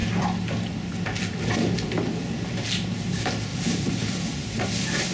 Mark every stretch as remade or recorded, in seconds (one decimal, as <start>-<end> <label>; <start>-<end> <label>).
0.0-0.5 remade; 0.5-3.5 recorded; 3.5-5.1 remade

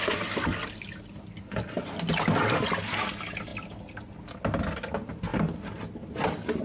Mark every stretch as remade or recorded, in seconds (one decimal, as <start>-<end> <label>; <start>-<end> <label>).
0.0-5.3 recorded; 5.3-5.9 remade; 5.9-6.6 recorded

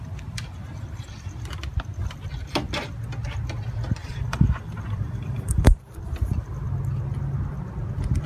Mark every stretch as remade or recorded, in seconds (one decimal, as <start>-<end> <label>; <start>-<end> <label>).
0.0-4.0 recorded; 4.0-5.7 remade; 5.7-8.3 recorded

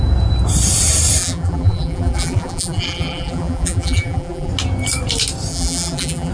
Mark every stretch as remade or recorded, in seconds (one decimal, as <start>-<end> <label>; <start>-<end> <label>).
0.0-1.2 recorded; 1.2-4.5 remade; 4.5-5.5 recorded; 5.5-6.3 remade